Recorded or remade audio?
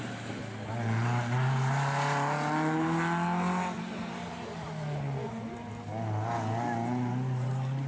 recorded